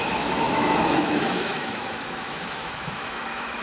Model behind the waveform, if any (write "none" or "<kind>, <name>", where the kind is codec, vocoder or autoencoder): autoencoder, DAC-VAE